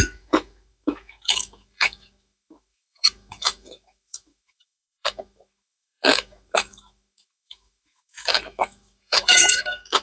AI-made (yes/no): yes